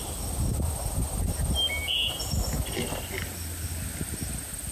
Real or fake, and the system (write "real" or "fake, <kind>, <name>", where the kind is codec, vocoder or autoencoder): real